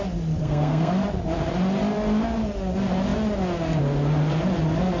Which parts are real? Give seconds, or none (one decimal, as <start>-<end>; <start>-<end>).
0.0-0.4; 0.9-5.0